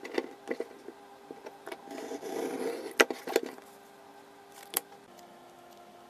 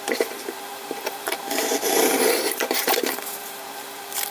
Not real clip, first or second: second